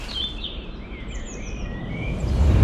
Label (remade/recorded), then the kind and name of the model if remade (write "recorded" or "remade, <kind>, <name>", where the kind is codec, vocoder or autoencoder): remade, vocoder, BigVGAN v2